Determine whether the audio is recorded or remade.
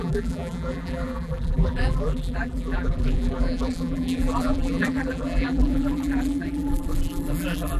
remade